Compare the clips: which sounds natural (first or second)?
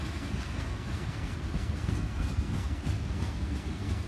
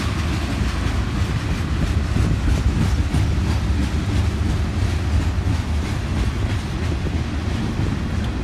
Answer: second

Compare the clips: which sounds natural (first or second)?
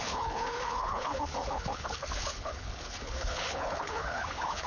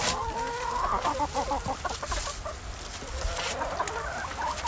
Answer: second